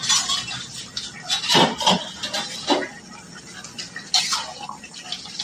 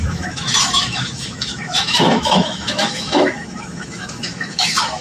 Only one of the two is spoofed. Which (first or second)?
second